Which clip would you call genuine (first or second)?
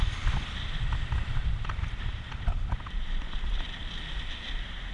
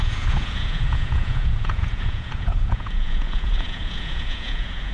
first